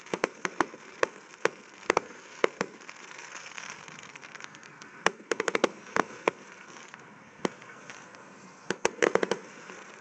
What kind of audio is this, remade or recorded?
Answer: remade